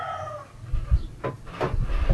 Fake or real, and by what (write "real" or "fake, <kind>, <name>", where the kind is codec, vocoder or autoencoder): real